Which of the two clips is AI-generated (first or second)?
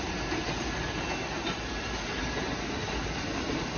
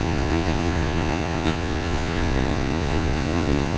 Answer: second